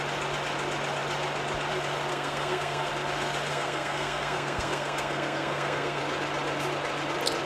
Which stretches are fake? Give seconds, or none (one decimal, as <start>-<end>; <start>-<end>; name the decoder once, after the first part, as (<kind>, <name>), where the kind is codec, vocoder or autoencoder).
2.1-2.9 (codec, SNAC); 3.5-6.0